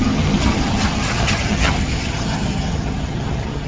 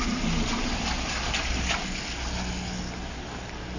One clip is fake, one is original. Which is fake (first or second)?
first